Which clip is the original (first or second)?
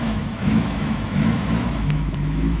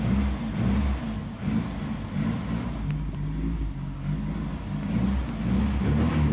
second